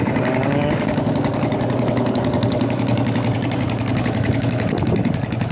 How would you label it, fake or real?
fake